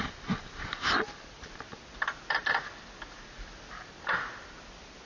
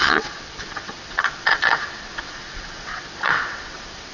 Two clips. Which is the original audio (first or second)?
first